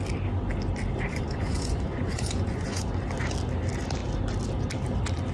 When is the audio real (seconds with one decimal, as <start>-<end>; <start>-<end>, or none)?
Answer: 0.0-1.1; 2.9-5.3